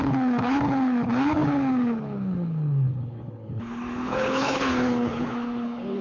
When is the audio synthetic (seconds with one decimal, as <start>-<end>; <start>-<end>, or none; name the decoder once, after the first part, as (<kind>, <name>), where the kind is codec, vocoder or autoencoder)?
0.0-6.0 (codec, HILCodec)